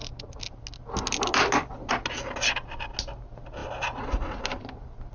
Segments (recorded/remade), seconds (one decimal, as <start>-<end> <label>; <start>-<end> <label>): 0.0-5.1 recorded